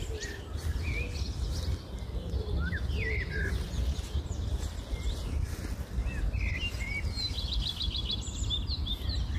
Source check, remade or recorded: recorded